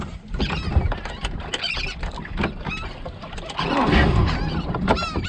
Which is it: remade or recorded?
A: recorded